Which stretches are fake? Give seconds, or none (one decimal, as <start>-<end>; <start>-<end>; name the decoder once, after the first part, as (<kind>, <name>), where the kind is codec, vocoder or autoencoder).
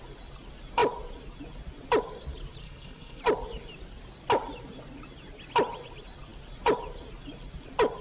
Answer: 2.6-3.2 (codec, SNAC)